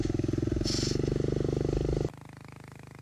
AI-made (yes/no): no